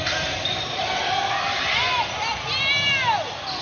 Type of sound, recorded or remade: recorded